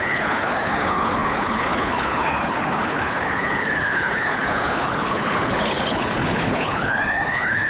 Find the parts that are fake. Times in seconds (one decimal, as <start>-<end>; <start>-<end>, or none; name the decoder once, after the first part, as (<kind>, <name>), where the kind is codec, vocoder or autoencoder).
0.0-7.7 (codec, HILCodec)